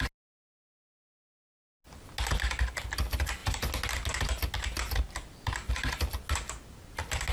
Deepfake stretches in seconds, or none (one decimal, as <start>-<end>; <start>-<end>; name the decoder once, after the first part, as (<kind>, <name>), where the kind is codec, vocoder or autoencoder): none